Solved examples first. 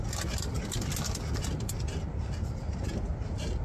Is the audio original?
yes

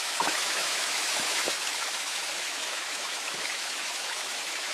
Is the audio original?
no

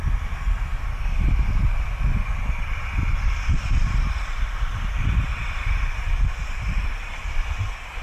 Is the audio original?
yes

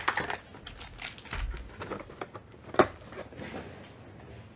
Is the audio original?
yes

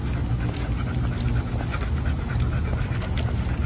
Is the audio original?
yes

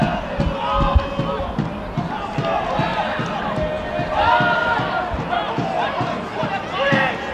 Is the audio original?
yes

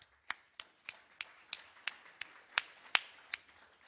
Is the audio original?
yes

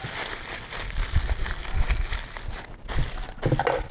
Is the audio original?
yes